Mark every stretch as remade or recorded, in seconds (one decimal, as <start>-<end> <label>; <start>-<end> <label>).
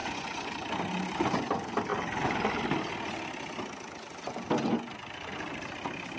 0.0-0.5 remade; 0.5-6.2 recorded